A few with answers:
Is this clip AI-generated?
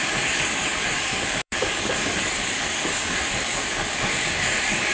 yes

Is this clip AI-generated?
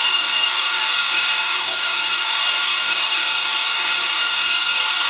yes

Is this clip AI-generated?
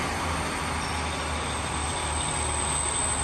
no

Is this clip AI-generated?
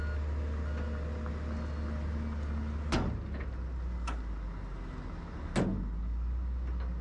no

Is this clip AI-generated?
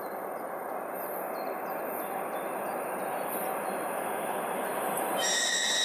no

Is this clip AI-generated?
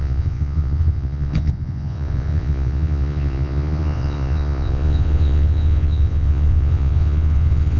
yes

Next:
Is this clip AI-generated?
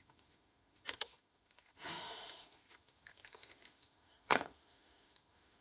yes